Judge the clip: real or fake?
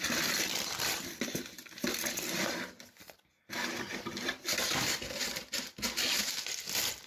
real